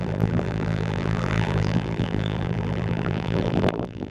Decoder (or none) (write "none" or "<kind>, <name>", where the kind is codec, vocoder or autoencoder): vocoder, BigVGAN v2